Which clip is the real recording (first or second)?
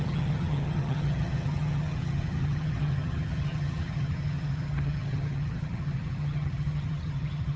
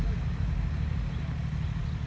second